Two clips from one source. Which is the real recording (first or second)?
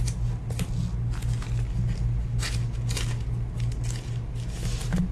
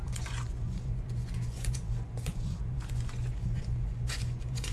first